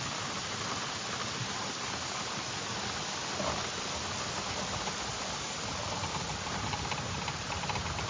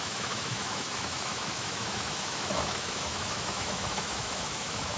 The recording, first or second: first